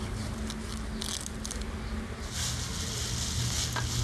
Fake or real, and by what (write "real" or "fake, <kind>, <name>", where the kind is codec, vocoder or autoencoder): real